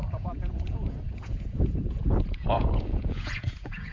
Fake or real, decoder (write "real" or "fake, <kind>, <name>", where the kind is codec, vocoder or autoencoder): fake, vocoder, Vocos